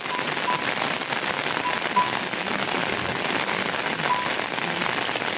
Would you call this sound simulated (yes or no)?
no